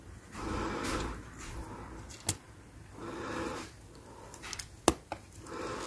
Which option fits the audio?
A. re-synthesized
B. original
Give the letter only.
B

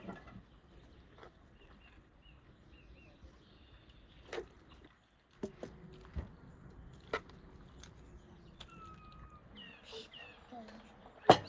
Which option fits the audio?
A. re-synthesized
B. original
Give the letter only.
B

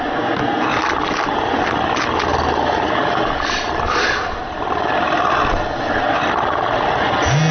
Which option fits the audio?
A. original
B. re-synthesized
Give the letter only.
A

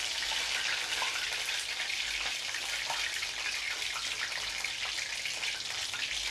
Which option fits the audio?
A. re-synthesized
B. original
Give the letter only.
B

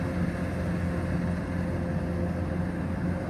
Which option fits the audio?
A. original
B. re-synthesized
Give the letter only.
A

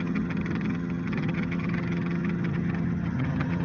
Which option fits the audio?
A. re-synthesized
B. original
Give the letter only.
A